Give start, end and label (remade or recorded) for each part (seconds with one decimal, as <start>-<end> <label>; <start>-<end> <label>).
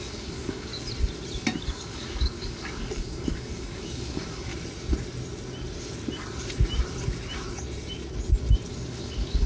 0.0-0.7 remade; 0.7-1.6 recorded; 1.6-4.5 remade; 4.5-8.7 recorded; 8.7-9.5 remade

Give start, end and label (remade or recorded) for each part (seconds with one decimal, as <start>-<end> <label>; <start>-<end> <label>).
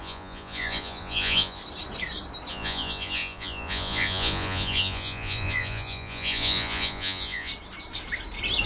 0.0-1.6 remade; 1.6-2.5 recorded; 2.5-7.5 remade; 7.5-8.7 recorded